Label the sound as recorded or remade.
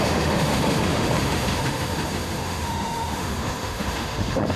remade